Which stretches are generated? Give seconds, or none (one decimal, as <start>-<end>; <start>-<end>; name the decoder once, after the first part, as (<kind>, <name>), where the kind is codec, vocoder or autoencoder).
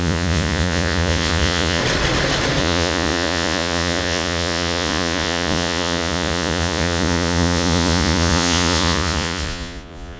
0.0-1.8 (vocoder, Vocos); 2.6-10.2